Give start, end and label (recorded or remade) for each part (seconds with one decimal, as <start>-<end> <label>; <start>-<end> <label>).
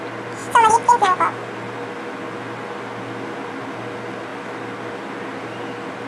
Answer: 0.0-6.1 recorded